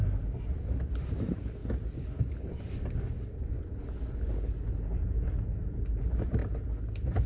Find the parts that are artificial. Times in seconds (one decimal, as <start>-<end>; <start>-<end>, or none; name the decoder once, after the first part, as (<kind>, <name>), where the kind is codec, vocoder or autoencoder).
0.0-1.6 (vocoder, BigVGAN v2); 6.0-6.4